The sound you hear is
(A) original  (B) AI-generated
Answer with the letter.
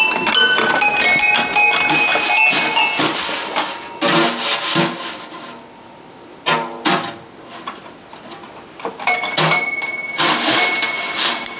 A